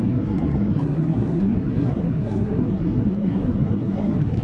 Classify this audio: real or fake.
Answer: fake